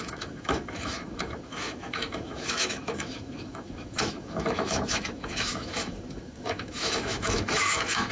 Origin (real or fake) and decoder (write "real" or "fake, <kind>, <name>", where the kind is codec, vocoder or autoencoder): fake, autoencoder, DAC-VAE